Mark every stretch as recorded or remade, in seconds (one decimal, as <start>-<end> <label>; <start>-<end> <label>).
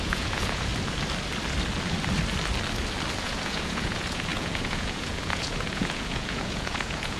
0.0-0.7 remade; 0.7-3.2 recorded; 3.2-7.2 remade